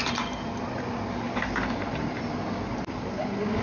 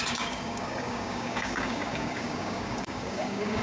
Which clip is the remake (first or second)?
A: second